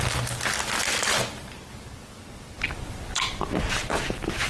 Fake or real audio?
real